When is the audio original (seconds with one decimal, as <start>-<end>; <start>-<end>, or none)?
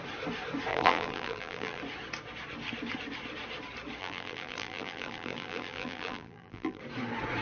0.0-0.7; 1.8-4.0; 6.8-7.4